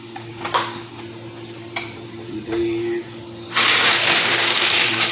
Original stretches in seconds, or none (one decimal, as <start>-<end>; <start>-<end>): 0.9-4.0